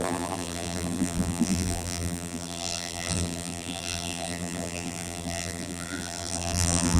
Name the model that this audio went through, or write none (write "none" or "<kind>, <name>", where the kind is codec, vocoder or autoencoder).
vocoder, BigVGAN v2